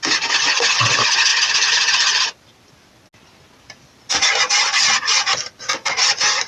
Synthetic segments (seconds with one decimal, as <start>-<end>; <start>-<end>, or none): 5.7-6.5

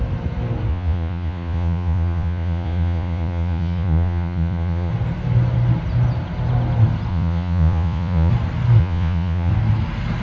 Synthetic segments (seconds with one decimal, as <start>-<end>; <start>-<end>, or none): 0.7-4.9; 7.1-8.3; 8.8-9.5